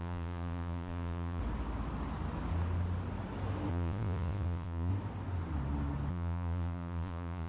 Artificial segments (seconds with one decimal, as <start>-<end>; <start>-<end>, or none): 0.0-1.4; 3.7-4.9; 6.1-7.5